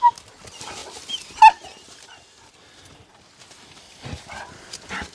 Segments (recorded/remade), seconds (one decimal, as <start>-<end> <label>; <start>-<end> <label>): 0.0-5.1 recorded